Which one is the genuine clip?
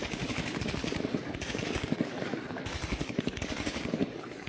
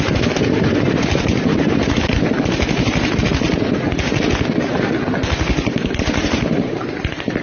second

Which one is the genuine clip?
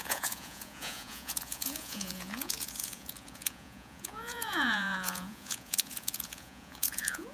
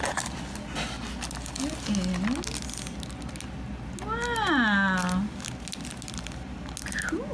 second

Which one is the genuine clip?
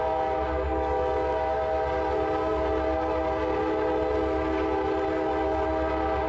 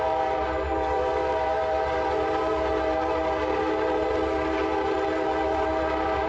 first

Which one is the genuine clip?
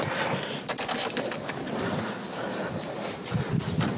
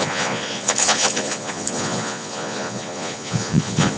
first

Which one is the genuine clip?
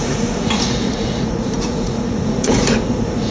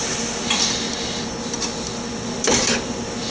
second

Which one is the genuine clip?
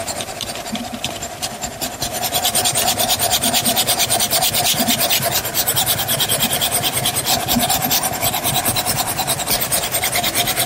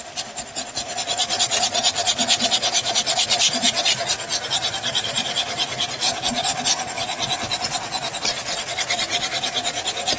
second